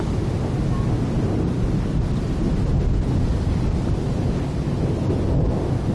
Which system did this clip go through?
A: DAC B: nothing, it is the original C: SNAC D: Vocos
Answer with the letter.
B